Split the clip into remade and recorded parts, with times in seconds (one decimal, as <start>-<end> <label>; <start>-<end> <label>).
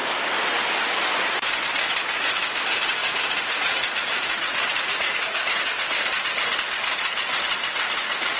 0.0-3.0 recorded; 3.0-5.6 remade; 5.6-8.4 recorded